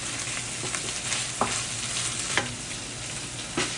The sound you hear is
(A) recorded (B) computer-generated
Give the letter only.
A